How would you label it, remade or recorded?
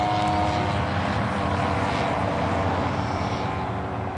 recorded